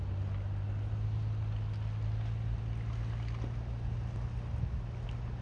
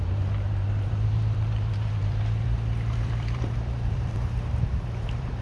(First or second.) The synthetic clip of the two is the second